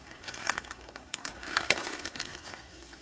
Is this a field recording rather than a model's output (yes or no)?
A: no